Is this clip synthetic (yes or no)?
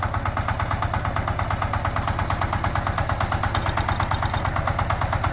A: no